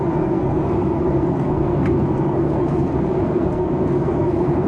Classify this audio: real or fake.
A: fake